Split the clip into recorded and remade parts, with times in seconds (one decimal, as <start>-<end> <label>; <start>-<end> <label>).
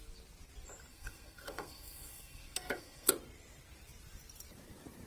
0.0-0.9 recorded; 0.9-3.1 remade; 3.1-5.1 recorded